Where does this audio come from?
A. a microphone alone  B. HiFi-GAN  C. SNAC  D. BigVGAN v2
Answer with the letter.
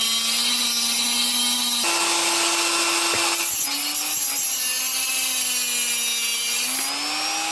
A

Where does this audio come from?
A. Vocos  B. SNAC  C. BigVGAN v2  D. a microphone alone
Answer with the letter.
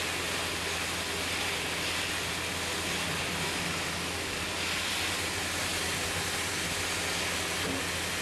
D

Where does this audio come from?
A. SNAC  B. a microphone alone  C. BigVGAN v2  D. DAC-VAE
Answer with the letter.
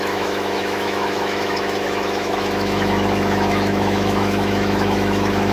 D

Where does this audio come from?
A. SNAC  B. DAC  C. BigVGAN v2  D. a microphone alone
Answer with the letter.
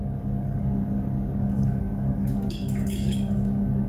B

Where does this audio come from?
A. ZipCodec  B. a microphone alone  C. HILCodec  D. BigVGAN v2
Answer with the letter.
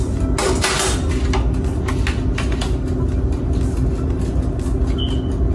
B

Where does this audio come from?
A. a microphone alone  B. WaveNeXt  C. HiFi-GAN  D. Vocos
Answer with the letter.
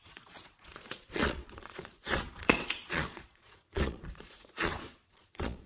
D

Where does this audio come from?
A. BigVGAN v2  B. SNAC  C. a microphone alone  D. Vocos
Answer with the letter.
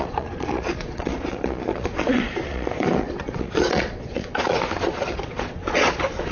D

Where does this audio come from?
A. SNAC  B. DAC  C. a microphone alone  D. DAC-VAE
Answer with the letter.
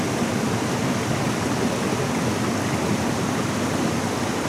C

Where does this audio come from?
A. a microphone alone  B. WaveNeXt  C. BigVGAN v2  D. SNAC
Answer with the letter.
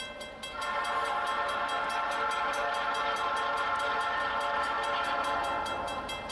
A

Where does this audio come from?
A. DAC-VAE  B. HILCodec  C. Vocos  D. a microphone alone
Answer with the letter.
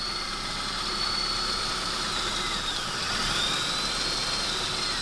D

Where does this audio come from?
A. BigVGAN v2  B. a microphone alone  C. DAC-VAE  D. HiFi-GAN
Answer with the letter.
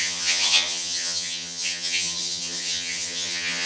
D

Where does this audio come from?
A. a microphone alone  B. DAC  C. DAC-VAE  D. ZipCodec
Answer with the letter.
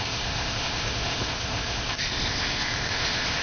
D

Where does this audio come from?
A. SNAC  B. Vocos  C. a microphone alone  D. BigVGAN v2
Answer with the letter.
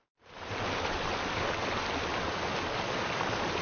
C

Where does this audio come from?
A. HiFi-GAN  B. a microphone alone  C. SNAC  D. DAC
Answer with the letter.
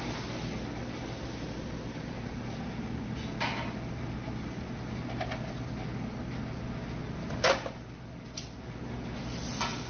B